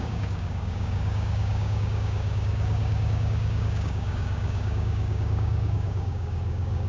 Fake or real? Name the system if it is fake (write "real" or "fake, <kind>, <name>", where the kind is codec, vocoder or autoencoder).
fake, codec, DAC